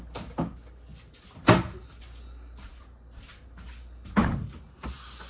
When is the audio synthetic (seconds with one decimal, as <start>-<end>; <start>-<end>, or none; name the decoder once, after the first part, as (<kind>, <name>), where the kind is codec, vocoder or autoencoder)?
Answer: none